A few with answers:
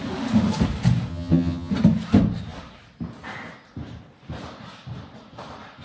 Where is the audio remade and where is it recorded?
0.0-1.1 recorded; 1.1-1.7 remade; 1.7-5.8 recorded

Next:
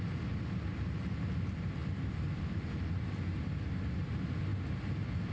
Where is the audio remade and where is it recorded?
0.0-5.3 recorded

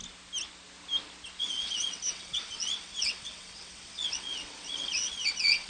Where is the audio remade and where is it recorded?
0.0-1.4 recorded; 1.4-5.7 remade

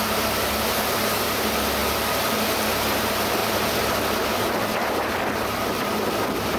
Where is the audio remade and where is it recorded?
0.0-3.4 recorded; 3.4-6.6 remade